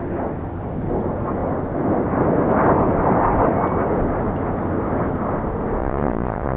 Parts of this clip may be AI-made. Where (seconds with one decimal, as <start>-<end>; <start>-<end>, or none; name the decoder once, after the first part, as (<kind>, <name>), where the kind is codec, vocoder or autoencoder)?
5.8-6.6 (vocoder, Vocos)